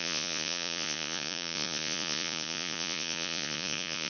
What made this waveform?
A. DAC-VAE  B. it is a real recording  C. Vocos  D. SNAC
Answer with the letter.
C